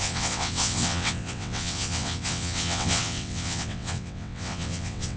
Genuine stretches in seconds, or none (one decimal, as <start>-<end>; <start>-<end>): none